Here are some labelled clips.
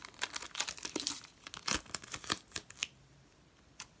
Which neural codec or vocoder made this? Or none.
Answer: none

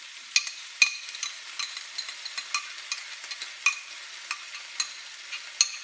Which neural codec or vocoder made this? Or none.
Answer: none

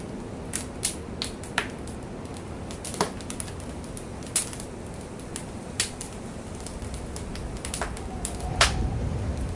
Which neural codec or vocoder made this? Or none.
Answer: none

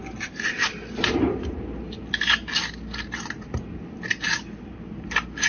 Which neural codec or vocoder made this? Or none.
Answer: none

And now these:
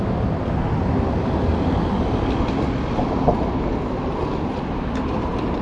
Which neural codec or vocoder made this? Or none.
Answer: none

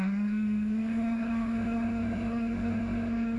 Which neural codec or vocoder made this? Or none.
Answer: codec, SNAC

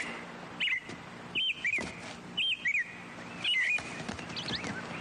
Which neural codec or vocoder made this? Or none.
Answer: none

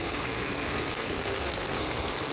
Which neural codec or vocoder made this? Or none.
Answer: codec, SNAC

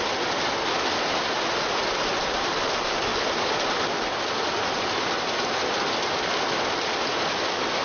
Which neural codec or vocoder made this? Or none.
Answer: none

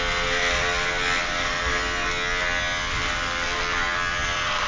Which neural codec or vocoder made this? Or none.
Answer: none